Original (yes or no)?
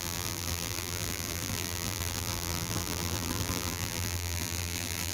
no